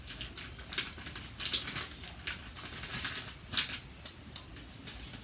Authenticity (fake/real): real